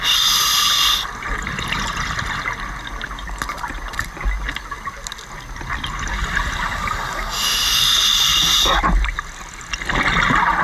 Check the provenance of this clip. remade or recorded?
recorded